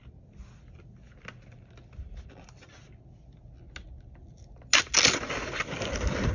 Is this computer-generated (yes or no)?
no